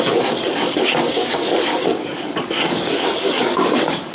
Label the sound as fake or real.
fake